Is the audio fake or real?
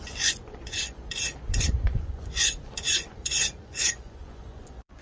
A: fake